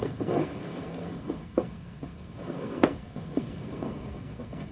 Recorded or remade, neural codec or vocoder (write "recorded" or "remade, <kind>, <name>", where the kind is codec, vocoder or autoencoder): remade, codec, SNAC